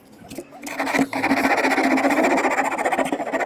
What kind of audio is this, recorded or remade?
recorded